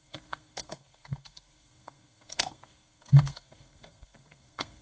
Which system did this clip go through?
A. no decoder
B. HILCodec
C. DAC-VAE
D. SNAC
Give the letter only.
D